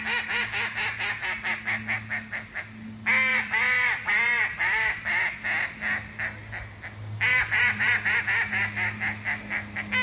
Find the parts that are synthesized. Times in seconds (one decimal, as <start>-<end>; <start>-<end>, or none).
3.3-5.1; 7.3-8.2